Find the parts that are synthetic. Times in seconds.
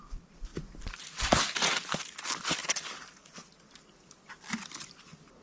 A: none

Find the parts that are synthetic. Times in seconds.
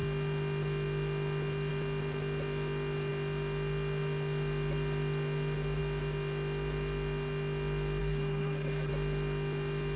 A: 8.0-8.9 (codec, SNAC)